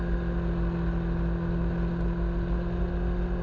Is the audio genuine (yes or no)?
yes